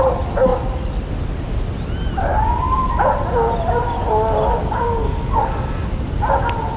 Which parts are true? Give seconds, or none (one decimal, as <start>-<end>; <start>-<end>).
0.0-2.3; 3.1-4.6; 5.7-6.8